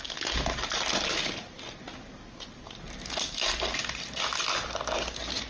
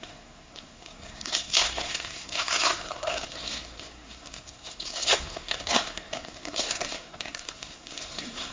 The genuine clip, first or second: first